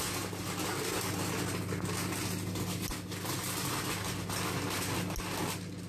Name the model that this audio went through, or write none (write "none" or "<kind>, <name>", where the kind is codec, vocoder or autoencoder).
none